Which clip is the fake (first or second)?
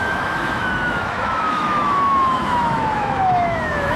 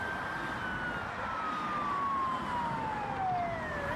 first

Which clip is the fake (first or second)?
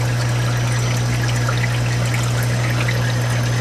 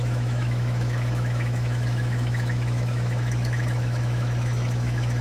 second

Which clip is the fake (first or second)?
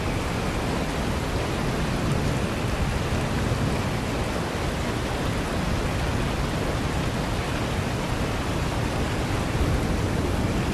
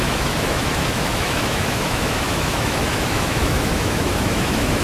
second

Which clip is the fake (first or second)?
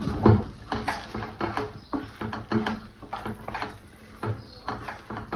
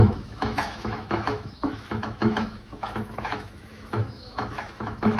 second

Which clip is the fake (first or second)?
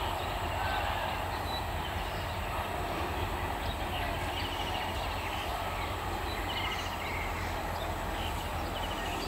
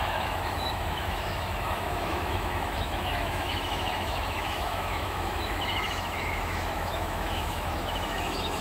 second